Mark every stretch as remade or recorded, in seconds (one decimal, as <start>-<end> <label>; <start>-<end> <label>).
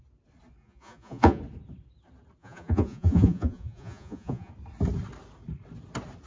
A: 0.0-0.6 recorded; 0.6-1.4 remade; 1.4-2.4 recorded; 2.4-4.5 remade; 4.5-6.3 recorded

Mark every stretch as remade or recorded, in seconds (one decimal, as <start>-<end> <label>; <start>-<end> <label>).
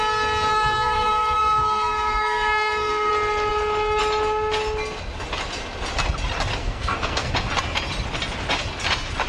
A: 0.0-0.5 recorded; 0.5-3.1 remade; 3.1-6.6 recorded; 6.6-7.3 remade; 7.3-9.3 recorded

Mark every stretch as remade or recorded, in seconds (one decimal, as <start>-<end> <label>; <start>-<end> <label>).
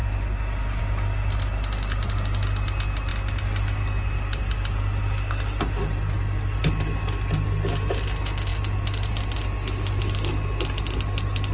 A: 0.0-11.5 recorded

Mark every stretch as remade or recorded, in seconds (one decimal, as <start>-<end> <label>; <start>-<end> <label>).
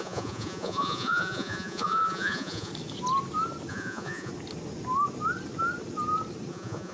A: 0.0-2.7 remade; 2.7-3.7 recorded; 3.7-4.3 remade; 4.3-6.5 recorded; 6.5-6.9 remade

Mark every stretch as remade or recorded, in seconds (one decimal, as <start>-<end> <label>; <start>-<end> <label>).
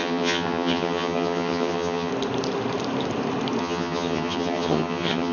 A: 0.0-2.1 remade; 2.1-3.6 recorded; 3.6-5.3 remade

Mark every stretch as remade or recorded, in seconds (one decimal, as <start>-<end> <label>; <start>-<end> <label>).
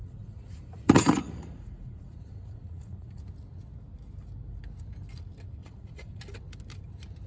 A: 0.0-3.2 remade; 3.2-5.6 recorded; 5.6-6.2 remade; 6.2-7.3 recorded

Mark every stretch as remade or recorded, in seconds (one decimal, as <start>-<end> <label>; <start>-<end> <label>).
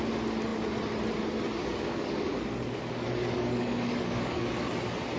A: 0.0-1.6 recorded; 1.6-4.7 remade; 4.7-5.2 recorded